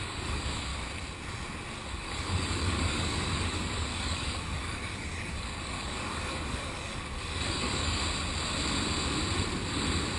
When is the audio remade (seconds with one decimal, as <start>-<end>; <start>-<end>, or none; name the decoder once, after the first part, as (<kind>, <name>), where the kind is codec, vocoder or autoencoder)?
0.0-0.7 (codec, DAC); 1.9-8.0